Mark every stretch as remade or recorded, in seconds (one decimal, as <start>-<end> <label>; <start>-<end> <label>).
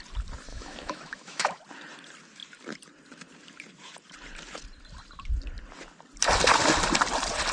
0.0-0.5 recorded; 0.5-1.6 remade; 1.6-7.5 recorded